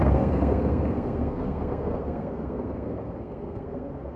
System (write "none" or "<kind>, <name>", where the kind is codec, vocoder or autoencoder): codec, SNAC